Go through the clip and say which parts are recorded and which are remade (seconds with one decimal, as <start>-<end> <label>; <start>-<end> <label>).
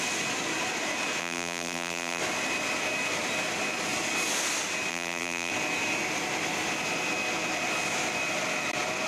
0.0-1.2 recorded; 1.2-2.2 remade; 2.2-4.9 recorded; 4.9-5.5 remade; 5.5-9.1 recorded